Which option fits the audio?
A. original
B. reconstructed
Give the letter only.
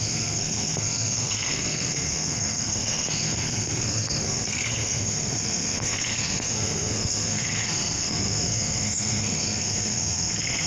B